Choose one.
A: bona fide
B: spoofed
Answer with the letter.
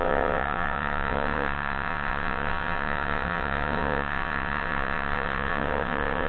B